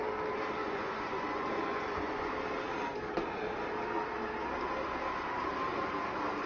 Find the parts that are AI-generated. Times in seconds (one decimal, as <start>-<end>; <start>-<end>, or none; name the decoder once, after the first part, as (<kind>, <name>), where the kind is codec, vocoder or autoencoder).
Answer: 0.6-2.3 (vocoder, Vocos)